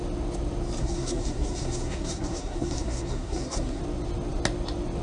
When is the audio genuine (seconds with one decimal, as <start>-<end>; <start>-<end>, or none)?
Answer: 0.0-0.8; 3.8-5.0